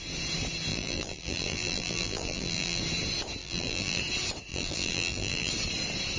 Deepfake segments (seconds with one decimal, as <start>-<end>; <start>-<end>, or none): 0.7-2.8; 3.4-4.0; 4.5-5.5